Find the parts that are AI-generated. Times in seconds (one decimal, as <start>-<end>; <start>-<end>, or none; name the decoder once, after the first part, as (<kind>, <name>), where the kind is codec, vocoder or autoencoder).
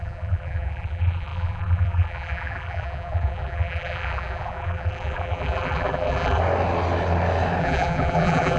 0.0-6.4 (vocoder, BigVGAN v2); 7.6-8.6